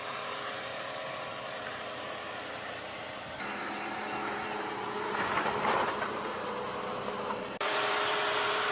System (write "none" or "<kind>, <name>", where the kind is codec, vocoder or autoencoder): vocoder, BigVGAN v2